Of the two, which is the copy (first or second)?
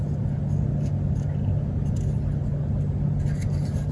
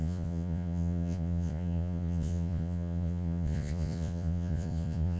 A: second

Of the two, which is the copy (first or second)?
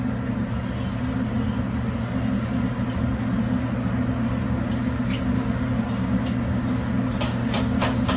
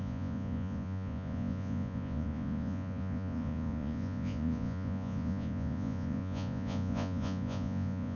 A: second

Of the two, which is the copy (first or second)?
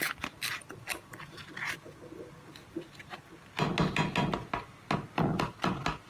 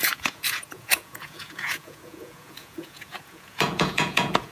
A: second